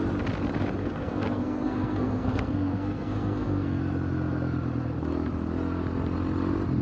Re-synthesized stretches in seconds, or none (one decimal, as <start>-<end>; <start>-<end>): 0.8-3.8